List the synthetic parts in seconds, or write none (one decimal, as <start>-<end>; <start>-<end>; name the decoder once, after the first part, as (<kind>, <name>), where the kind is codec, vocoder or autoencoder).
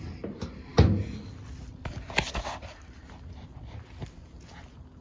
none